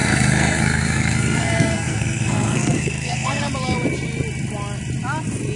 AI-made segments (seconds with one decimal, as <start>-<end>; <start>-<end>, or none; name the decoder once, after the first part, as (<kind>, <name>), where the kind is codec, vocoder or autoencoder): 0.0-3.4 (codec, SNAC)